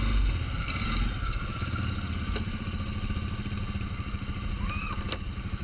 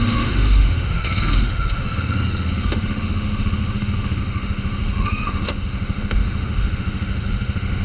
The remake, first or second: second